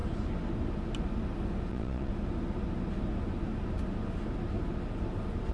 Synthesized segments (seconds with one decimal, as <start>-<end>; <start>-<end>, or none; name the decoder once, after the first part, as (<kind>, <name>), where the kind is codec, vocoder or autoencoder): 1.7-2.1 (vocoder, Vocos)